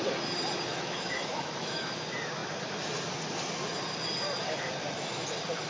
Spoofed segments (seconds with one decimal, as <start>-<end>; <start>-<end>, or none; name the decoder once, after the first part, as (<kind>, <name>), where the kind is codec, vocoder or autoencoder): 0.7-1.9 (autoencoder, DAC-VAE)